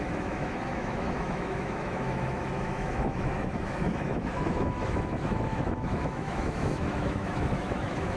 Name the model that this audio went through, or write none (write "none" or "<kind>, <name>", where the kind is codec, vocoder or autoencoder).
autoencoder, DAC-VAE